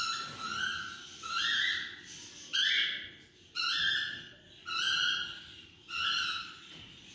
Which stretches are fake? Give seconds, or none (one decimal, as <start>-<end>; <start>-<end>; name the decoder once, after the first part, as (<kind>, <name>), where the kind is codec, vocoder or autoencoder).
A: 0.0-1.7 (vocoder, Vocos); 5.0-7.1